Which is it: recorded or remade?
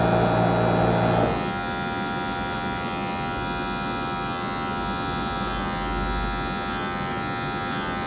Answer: recorded